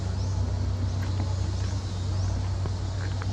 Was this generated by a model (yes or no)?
no